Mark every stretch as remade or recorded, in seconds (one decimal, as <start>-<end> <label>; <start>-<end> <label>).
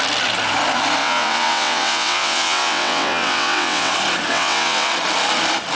0.0-1.0 recorded; 1.0-3.9 remade; 3.9-4.3 recorded; 4.3-4.9 remade; 4.9-5.7 recorded